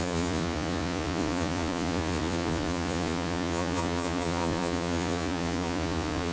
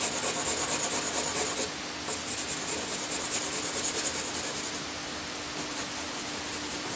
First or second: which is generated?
first